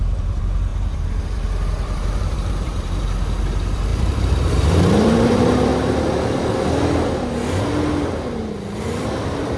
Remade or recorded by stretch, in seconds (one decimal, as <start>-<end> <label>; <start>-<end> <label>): 0.0-5.7 remade; 5.7-8.0 recorded; 8.0-9.6 remade